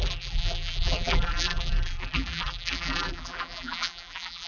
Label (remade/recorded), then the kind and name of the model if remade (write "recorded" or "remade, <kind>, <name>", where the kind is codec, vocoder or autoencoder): remade, vocoder, BigVGAN v2